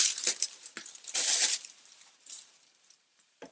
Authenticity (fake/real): fake